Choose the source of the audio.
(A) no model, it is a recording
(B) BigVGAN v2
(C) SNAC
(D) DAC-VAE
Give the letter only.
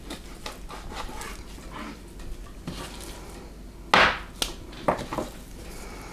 A